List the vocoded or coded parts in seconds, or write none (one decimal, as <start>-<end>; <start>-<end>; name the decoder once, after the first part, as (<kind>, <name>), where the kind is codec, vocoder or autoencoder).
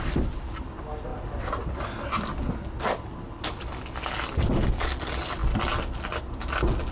none